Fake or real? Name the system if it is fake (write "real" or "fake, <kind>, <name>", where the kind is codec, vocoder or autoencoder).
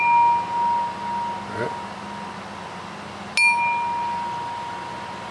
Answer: real